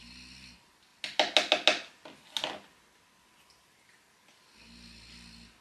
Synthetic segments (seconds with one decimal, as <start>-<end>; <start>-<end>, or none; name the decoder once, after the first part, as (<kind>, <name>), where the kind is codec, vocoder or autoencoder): none